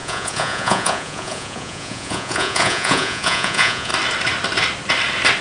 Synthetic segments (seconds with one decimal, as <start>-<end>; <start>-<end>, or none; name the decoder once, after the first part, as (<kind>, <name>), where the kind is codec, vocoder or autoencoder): 0.0-3.9 (vocoder, Vocos)